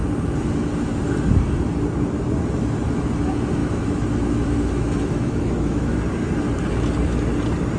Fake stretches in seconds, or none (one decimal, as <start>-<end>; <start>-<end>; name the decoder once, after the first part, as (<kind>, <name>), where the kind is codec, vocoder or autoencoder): 3.6-6.0 (autoencoder, DAC-VAE)